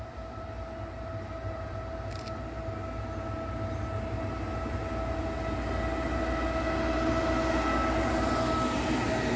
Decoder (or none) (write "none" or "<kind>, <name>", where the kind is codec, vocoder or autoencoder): none